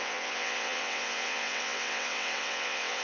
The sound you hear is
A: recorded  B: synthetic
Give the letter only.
B